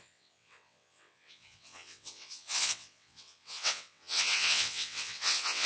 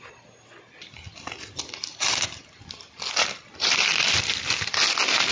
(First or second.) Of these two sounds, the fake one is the first